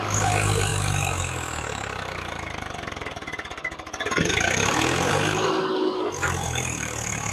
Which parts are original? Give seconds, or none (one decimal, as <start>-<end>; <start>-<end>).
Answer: none